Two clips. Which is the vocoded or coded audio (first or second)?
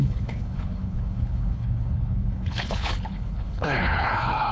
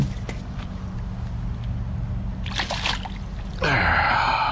first